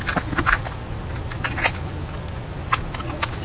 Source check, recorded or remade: recorded